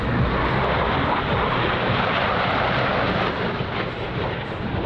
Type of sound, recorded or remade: recorded